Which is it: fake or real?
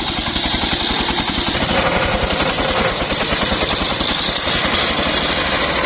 real